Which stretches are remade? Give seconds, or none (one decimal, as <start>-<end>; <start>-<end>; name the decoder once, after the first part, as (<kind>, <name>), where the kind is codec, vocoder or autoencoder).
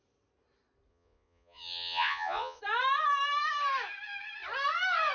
0.9-2.6 (vocoder, Vocos)